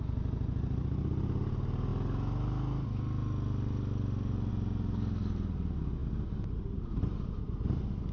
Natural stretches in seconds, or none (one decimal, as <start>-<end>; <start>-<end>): 0.0-8.1